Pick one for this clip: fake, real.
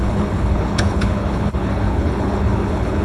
fake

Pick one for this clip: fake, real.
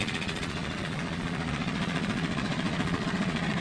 fake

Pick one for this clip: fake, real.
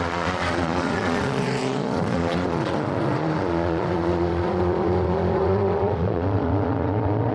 fake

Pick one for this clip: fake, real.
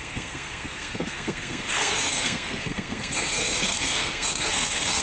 fake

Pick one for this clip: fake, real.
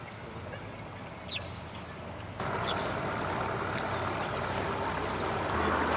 real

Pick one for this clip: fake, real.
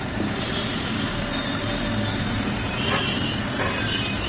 real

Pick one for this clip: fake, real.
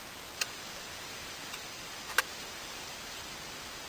real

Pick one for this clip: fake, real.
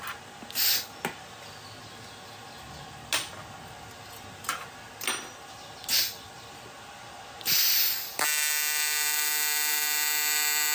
real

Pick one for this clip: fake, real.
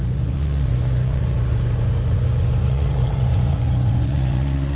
fake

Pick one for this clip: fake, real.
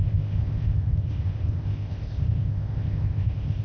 fake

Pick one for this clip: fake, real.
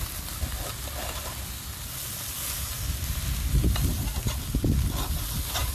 real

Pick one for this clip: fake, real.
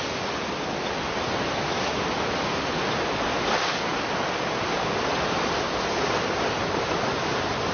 real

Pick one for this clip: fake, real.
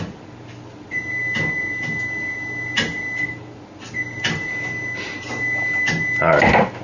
real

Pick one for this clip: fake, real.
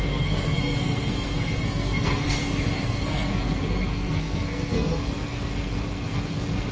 fake